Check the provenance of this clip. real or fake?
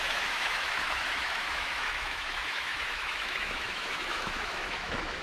fake